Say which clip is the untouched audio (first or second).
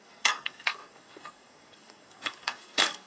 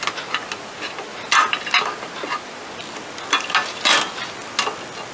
second